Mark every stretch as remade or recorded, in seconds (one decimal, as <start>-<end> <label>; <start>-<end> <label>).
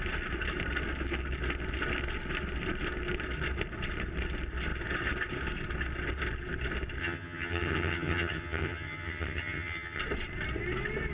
0.0-7.0 recorded; 7.0-10.0 remade; 10.0-11.1 recorded